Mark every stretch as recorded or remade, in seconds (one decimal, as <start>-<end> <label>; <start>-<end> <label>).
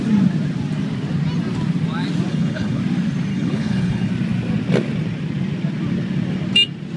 0.0-2.3 recorded; 2.3-2.8 remade; 2.8-3.3 recorded; 3.3-4.1 remade; 4.1-7.0 recorded